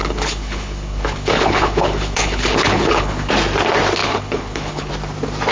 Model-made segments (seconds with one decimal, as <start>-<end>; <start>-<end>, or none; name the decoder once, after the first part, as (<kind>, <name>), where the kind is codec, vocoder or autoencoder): 0.0-3.3 (codec, HILCodec); 4.0-4.9